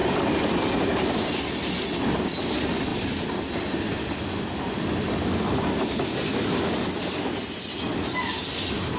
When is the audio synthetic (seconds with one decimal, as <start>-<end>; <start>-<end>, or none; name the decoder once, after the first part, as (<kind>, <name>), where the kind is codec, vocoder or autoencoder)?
none